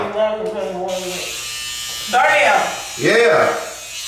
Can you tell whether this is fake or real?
real